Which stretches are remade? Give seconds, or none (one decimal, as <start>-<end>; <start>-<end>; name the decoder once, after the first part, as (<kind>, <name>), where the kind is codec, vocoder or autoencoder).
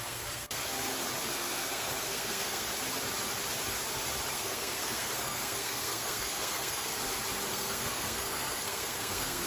0.0-0.6 (codec, SNAC); 1.3-2.7; 4.3-6.9; 7.5-9.5